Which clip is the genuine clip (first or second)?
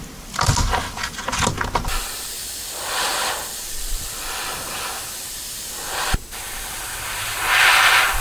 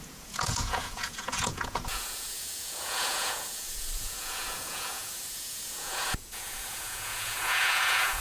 first